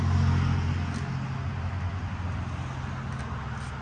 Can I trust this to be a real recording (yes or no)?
yes